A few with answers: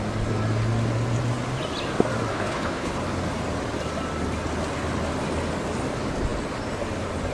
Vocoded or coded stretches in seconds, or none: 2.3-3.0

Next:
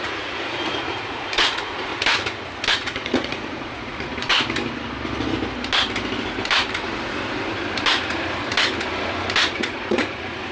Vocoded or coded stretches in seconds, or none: 0.0-1.9; 2.7-4.3; 9.5-10.5

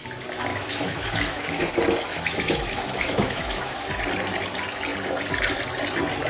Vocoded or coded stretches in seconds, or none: 0.5-1.7; 2.1-3.9

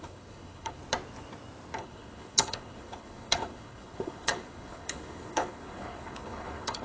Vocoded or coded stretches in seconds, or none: 0.0-0.8; 1.8-6.8

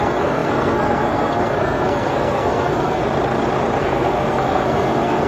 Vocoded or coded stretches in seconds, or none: 0.0-3.0; 3.8-5.3

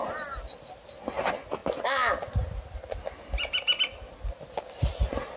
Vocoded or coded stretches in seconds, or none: none

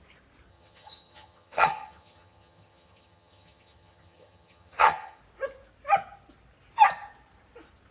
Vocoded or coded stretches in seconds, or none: 0.5-5.2